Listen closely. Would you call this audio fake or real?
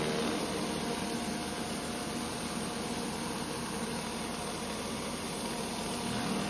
real